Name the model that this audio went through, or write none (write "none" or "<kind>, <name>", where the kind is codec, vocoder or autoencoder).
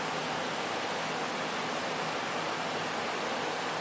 none